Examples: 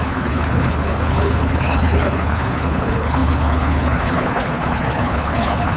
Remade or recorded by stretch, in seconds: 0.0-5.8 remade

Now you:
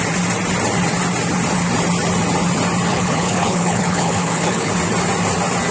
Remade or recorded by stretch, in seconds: 0.0-2.9 recorded; 2.9-4.7 remade; 4.7-5.7 recorded

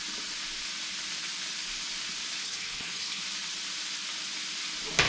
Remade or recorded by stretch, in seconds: 0.0-2.4 recorded; 2.4-3.2 remade; 3.2-5.1 recorded

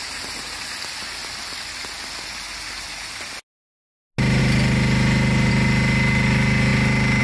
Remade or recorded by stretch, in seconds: 0.0-7.2 recorded